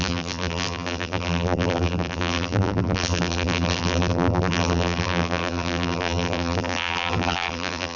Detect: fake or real fake